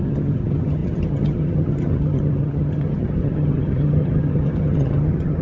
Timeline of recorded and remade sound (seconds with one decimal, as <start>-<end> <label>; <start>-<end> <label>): 0.0-5.4 remade